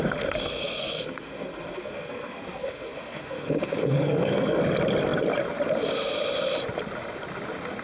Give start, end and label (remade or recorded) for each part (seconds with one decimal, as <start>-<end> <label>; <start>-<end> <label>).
0.0-0.8 recorded; 0.8-4.6 remade; 4.6-7.8 recorded